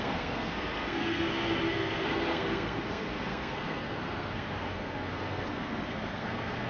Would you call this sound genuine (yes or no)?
no